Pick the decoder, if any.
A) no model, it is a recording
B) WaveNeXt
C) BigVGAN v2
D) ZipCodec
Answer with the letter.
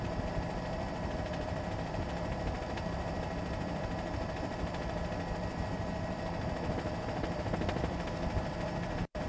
C